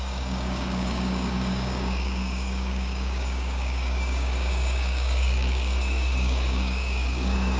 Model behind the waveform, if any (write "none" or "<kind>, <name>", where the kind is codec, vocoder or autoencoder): codec, DAC